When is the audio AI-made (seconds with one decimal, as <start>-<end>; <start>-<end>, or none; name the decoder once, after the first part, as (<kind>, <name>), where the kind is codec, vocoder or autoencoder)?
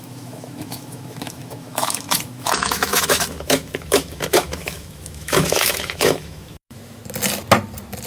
0.0-7.0 (autoencoder, DAC-VAE)